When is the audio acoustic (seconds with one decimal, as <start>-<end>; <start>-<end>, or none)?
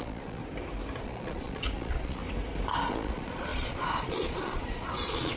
0.4-1.0; 2.2-2.9